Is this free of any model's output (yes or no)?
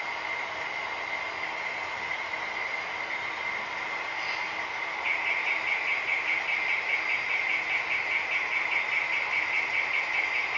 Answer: yes